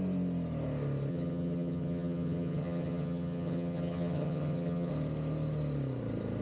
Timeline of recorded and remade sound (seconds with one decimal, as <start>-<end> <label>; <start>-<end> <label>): 0.0-1.1 recorded; 1.1-4.9 remade; 4.9-6.4 recorded